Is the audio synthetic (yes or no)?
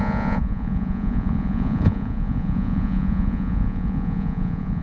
yes